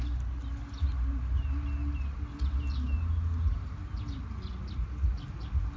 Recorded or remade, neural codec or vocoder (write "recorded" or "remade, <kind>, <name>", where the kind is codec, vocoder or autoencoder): recorded